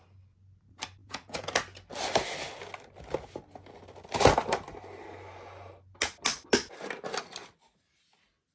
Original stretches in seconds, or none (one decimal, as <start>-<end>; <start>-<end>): 0.0-1.0; 1.5-8.5